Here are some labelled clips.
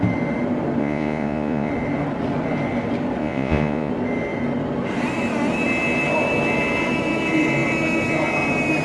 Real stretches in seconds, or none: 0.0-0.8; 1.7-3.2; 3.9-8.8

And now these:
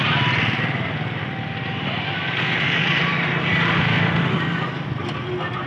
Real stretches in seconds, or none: 0.0-3.7; 4.3-5.7

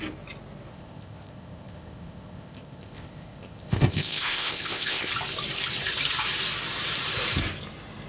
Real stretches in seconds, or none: 0.0-0.7; 5.1-8.1

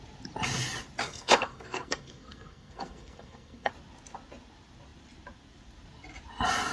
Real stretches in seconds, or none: 0.0-1.0; 3.7-6.7